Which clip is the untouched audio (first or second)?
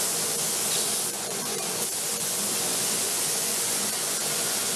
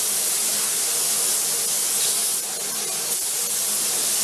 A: second